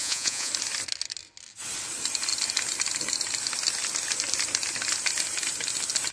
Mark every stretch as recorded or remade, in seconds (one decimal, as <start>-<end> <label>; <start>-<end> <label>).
0.0-0.5 remade; 0.5-6.1 recorded